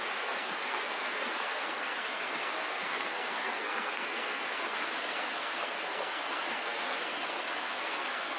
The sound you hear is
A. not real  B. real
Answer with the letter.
A